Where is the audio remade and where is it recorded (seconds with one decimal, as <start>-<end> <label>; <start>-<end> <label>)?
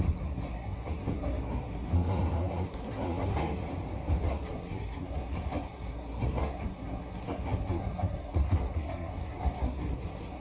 0.0-3.7 remade; 3.7-4.2 recorded; 4.2-10.4 remade